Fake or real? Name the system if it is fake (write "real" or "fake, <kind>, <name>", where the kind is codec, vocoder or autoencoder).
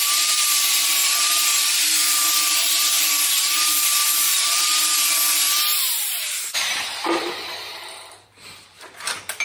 fake, vocoder, BigVGAN v2